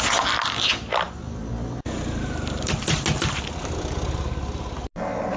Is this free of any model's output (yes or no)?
yes